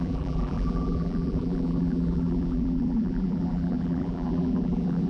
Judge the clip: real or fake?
fake